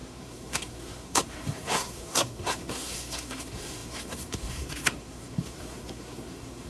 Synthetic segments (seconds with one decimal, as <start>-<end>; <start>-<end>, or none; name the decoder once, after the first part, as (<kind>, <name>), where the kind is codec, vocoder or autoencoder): 0.0-6.7 (codec, SNAC)